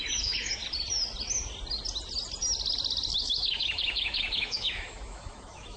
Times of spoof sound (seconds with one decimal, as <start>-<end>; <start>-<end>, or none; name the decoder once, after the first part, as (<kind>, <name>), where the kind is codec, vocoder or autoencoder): 0.0-0.6 (autoencoder, DAC-VAE); 3.2-5.8